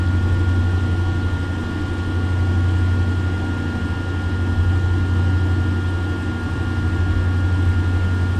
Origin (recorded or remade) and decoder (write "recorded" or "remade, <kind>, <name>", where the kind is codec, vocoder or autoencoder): recorded